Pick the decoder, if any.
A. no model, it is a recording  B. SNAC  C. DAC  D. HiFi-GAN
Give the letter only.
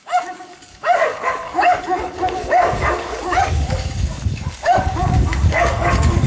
C